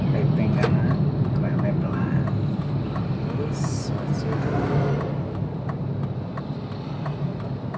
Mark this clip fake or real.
real